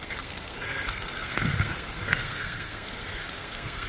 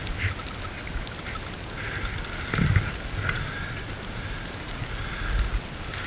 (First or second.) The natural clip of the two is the second